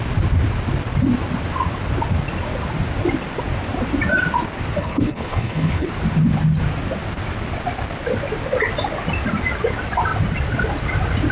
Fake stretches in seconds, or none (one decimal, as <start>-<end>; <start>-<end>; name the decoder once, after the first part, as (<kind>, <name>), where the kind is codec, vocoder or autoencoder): 4.8-5.9 (codec, HILCodec)